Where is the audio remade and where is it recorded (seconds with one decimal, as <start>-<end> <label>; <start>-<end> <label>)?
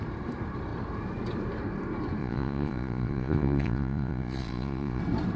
0.0-2.2 recorded; 2.2-5.0 remade; 5.0-5.4 recorded